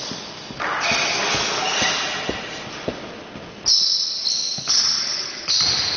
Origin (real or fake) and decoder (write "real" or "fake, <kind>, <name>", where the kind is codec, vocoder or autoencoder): real